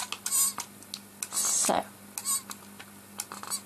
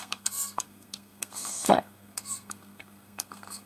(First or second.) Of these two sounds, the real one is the first